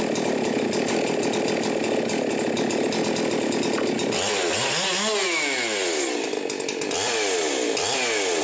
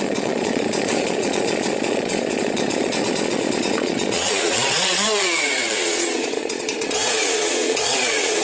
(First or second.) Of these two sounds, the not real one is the second